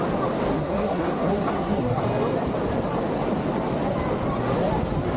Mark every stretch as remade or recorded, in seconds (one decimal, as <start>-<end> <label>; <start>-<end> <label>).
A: 0.0-0.5 recorded; 0.5-2.0 remade; 2.0-5.2 recorded

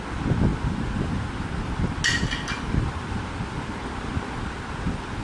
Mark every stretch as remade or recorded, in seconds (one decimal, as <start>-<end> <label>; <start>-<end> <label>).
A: 0.0-5.2 recorded

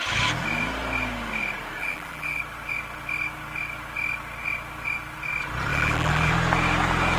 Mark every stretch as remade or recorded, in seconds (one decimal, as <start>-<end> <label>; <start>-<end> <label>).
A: 0.0-1.8 recorded; 1.8-2.4 remade; 2.4-5.7 recorded; 5.7-6.3 remade; 6.3-7.2 recorded

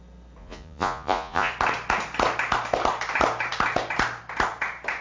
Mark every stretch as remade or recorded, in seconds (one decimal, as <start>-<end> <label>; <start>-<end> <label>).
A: 0.0-0.4 recorded; 0.4-1.5 remade; 1.5-5.0 recorded

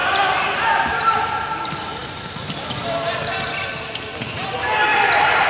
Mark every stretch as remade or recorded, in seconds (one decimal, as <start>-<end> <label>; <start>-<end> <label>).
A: 0.0-2.0 recorded; 2.0-3.7 remade; 3.7-4.9 recorded; 4.9-5.5 remade

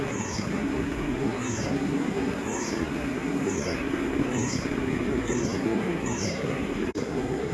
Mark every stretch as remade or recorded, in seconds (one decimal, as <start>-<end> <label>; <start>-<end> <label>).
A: 0.0-7.5 remade

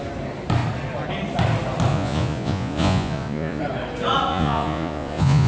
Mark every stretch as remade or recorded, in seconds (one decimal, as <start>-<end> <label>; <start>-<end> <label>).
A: 0.0-1.9 recorded; 1.9-3.6 remade; 3.6-4.3 recorded; 4.3-5.5 remade